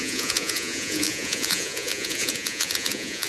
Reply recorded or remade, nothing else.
remade